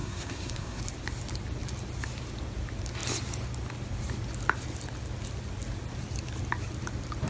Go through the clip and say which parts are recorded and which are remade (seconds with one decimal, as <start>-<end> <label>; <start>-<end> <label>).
0.0-0.8 remade; 0.8-7.3 recorded